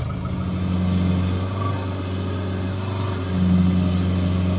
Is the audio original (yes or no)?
yes